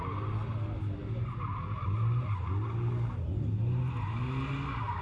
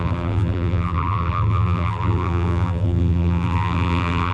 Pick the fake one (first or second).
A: second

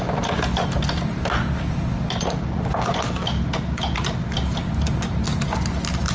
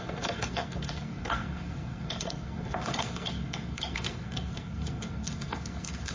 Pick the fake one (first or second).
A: second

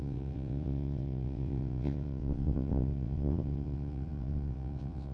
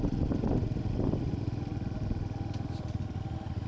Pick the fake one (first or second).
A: first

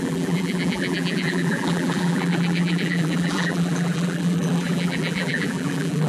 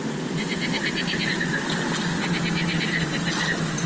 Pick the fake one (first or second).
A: first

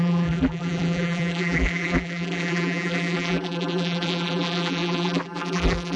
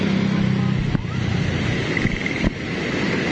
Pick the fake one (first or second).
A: first